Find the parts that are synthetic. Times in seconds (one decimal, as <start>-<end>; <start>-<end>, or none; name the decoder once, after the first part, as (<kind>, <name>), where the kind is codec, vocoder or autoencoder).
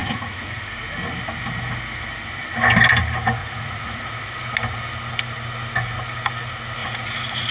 0.0-0.7 (vocoder, Vocos); 3.4-4.5; 6.8-7.5